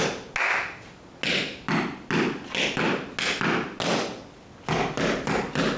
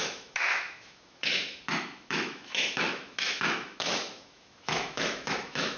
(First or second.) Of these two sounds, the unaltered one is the first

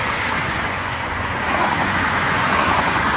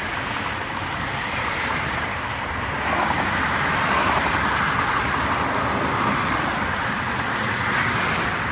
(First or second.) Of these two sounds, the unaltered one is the second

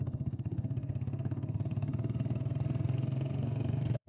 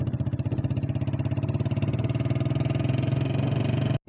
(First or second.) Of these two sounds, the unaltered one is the second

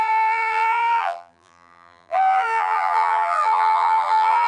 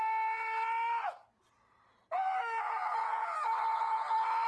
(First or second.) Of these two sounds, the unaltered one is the second